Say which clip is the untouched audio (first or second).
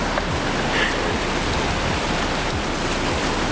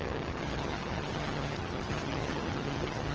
first